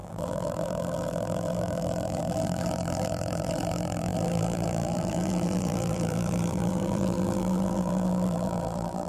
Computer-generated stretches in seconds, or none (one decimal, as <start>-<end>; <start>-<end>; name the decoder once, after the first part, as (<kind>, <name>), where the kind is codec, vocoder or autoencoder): 0.0-9.1 (vocoder, BigVGAN v2)